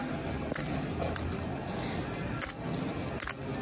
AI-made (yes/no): no